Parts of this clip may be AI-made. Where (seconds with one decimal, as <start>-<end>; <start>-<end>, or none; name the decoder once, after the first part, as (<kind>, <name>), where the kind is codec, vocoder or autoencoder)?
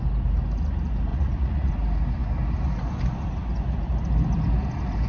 1.1-1.7 (vocoder, Vocos)